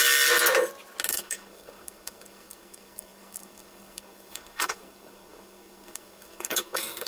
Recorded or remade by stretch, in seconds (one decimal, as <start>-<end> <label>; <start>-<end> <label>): 0.0-1.1 recorded; 1.1-7.1 remade